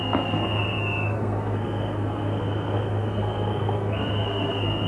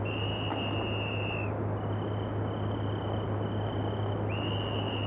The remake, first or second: first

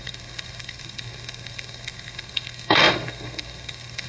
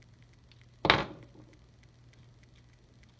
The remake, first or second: first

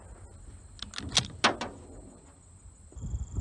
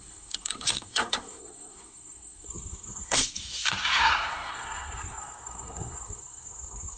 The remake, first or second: second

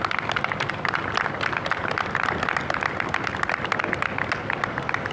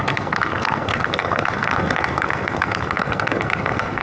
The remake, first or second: second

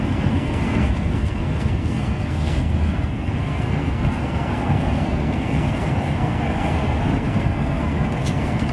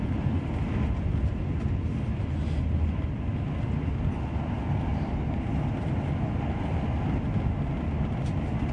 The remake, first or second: first